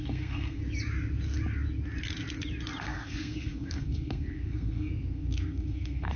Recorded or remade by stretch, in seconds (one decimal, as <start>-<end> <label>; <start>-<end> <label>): 0.0-0.6 remade; 0.6-2.8 recorded; 2.8-6.2 remade